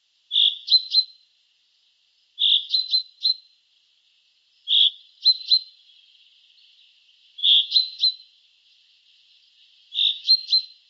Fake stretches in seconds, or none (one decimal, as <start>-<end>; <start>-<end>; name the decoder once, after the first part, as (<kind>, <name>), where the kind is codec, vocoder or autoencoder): 7.4-8.0 (vocoder, Vocos)